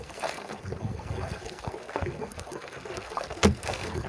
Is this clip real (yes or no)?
no